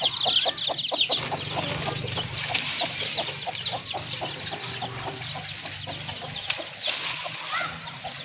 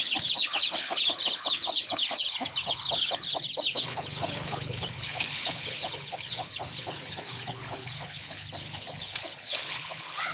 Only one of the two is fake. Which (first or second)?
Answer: second